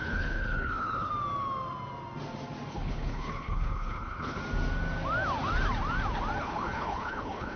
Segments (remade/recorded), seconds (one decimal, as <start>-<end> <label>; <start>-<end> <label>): 0.0-1.1 remade; 1.1-2.7 recorded; 2.7-4.4 remade; 4.4-6.4 recorded; 6.4-7.6 remade